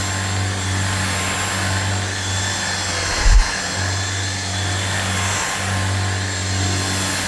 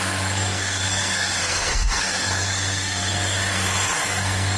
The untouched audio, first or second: first